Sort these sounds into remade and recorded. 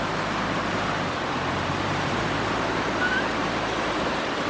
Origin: remade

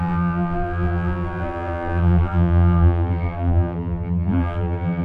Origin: remade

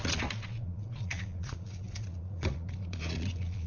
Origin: remade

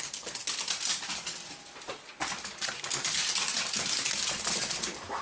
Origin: recorded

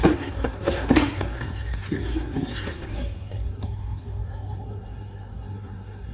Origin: remade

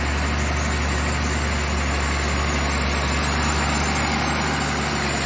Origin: recorded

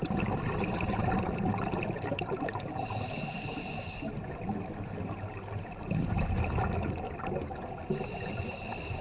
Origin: recorded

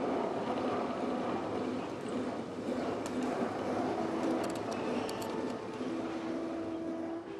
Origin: recorded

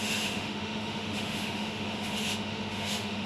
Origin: remade